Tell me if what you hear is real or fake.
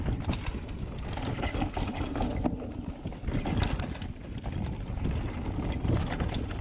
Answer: real